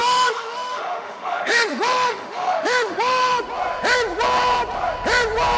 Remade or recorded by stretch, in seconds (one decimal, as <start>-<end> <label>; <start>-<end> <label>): 0.0-3.4 remade; 3.4-5.6 recorded